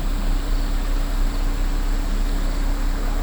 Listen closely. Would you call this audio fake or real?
real